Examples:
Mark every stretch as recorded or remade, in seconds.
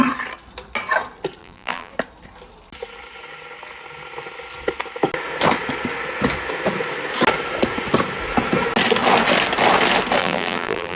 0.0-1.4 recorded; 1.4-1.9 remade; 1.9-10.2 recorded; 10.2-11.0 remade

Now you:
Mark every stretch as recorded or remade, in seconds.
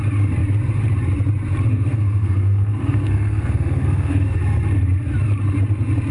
0.0-1.7 recorded; 1.7-4.4 remade; 4.4-6.1 recorded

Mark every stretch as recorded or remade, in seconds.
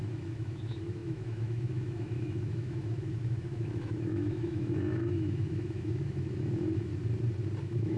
0.0-6.9 remade; 6.9-7.6 recorded; 7.6-8.0 remade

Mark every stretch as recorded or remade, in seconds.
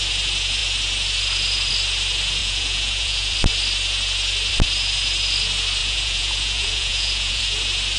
0.0-2.4 recorded; 2.4-3.3 remade; 3.3-5.8 recorded; 5.8-7.4 remade; 7.4-8.0 recorded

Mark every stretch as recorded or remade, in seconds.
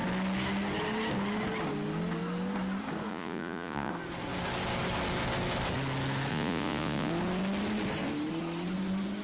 0.0-3.1 recorded; 3.1-3.9 remade; 3.9-6.3 recorded; 6.3-7.1 remade; 7.1-9.2 recorded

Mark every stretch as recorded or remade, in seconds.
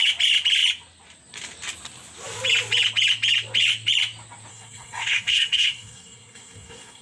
0.0-4.5 recorded; 4.5-7.0 remade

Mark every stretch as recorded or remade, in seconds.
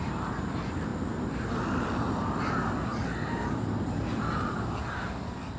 0.0-0.9 recorded; 0.9-1.9 remade; 1.9-5.6 recorded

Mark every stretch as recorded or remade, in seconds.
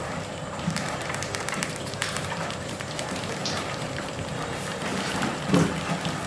0.0-4.9 remade; 4.9-6.3 recorded